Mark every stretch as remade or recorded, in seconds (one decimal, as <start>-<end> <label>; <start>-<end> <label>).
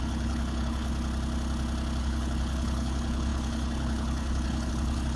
0.0-0.9 remade; 0.9-2.0 recorded; 2.0-5.2 remade